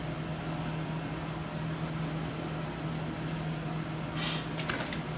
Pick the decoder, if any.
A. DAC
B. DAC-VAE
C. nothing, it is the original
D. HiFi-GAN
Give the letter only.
C